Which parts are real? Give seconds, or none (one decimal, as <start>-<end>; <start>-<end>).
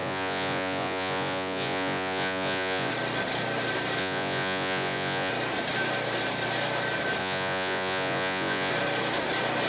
2.9-4.0; 5.3-7.2; 8.7-9.7